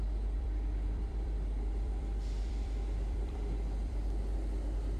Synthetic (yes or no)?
yes